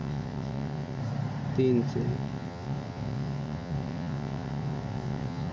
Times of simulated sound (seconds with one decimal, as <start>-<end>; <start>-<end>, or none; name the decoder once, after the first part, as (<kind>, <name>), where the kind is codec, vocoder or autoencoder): 0.0-1.0 (vocoder, WaveNeXt); 2.1-5.5